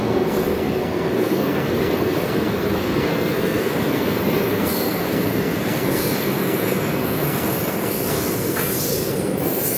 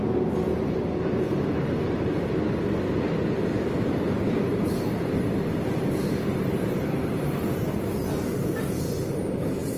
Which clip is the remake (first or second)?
first